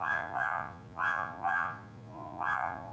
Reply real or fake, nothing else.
fake